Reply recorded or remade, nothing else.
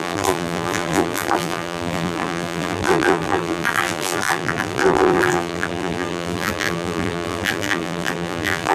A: remade